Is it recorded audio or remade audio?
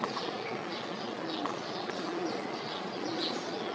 remade